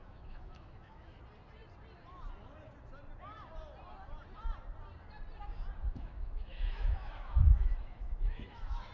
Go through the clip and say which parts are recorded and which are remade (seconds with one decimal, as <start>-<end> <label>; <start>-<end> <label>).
0.0-1.2 remade; 1.2-5.9 recorded; 5.9-8.9 remade